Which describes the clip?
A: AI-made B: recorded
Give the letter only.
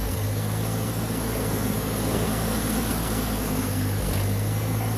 A